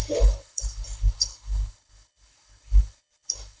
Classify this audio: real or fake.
fake